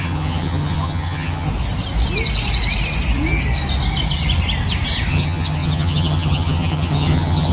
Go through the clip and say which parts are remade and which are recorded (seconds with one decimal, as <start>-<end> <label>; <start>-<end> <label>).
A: 0.0-1.5 remade; 1.5-5.1 recorded; 5.1-7.5 remade